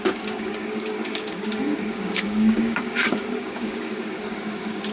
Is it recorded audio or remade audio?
remade